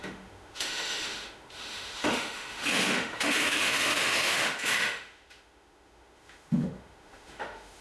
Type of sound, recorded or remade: remade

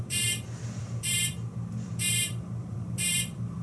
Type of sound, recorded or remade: remade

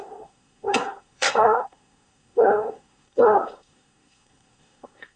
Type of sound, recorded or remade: remade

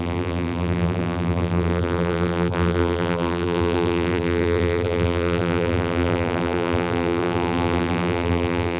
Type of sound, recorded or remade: remade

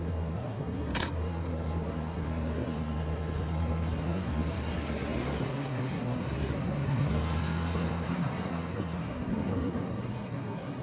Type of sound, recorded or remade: remade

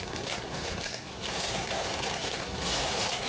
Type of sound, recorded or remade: remade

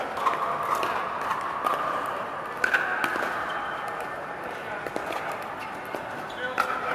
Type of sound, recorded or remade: recorded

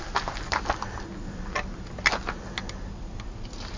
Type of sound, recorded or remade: recorded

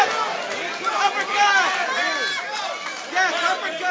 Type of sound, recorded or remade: recorded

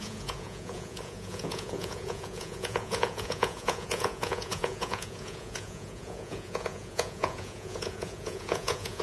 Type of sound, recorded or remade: remade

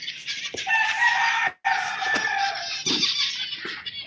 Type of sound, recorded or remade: recorded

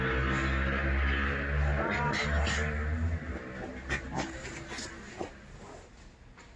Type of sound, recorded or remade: recorded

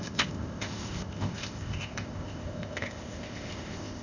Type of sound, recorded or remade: remade